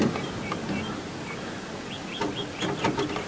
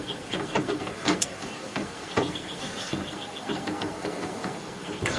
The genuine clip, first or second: first